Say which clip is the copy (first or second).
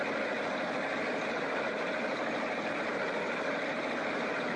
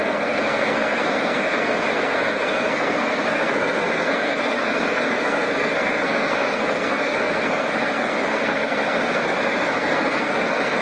second